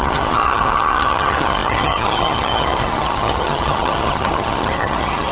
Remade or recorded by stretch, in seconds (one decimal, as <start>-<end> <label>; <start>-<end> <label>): 0.0-5.3 remade